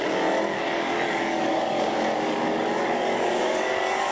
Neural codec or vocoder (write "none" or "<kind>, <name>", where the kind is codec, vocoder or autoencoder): codec, DAC